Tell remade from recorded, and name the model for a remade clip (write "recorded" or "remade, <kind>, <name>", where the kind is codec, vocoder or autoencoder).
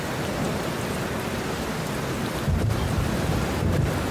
recorded